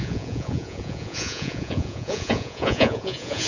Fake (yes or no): yes